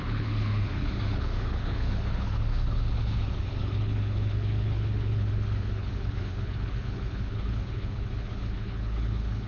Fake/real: fake